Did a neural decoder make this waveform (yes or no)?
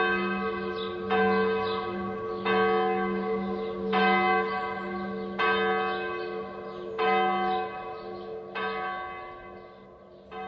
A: no